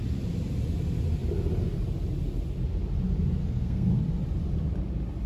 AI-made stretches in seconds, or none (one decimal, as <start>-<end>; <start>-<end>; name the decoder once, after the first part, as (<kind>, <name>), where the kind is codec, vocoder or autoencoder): 3.4-4.0 (codec, SNAC)